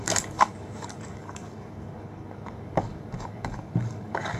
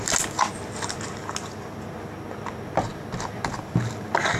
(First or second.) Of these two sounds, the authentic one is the second